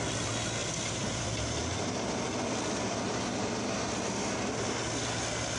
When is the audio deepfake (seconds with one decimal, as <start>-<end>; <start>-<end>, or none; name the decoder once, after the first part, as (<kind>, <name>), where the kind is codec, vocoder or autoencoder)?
0.6-4.0 (vocoder, BigVGAN v2)